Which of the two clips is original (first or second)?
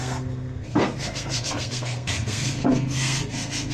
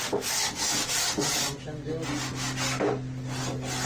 second